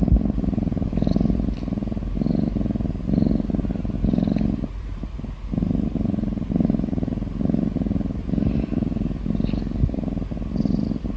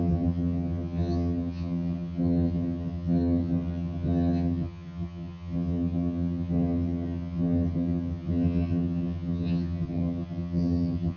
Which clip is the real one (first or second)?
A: first